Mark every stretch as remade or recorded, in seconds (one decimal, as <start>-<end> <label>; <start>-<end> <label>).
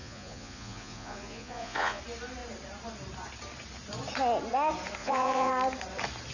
0.0-2.0 remade; 2.0-5.0 recorded; 5.0-5.5 remade; 5.5-6.3 recorded